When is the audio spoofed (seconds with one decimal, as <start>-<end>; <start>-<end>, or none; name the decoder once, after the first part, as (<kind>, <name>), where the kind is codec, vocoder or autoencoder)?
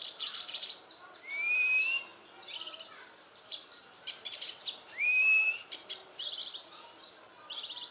0.0-2.1 (vocoder, BigVGAN v2); 3.3-6.4; 7.5-7.9